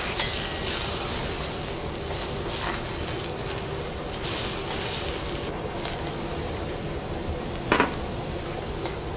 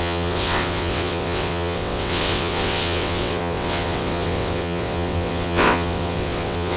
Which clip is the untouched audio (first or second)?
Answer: first